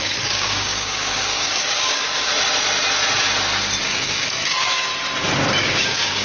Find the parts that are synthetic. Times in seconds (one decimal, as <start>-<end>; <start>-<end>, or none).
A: 0.0-2.3; 3.8-4.9; 5.6-6.2